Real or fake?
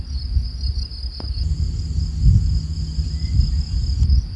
real